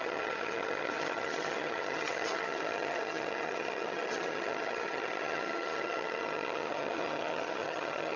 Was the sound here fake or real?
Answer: fake